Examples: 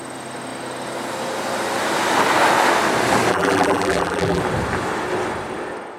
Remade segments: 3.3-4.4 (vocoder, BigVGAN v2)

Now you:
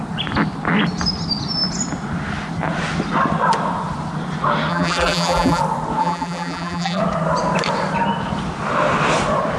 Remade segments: 4.7-5.6 (vocoder, BigVGAN v2); 6.0-7.0

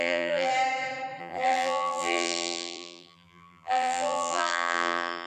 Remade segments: 0.0-0.5 (vocoder, BigVGAN v2); 1.2-5.3

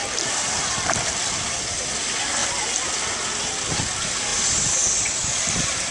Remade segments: 0.0-0.5 (vocoder, BigVGAN v2); 2.4-3.0; 4.3-5.9